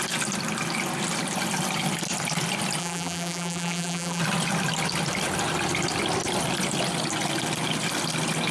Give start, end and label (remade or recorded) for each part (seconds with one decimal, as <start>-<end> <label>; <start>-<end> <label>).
0.0-2.8 recorded; 2.8-4.2 remade; 4.2-8.5 recorded